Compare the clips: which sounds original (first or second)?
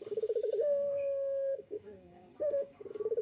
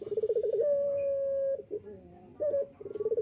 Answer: second